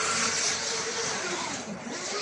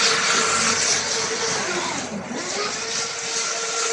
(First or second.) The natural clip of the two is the second